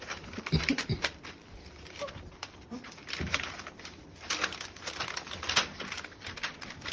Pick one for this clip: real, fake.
real